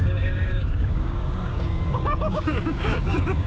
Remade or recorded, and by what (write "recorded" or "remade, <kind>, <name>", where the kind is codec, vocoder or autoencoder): remade, codec, DAC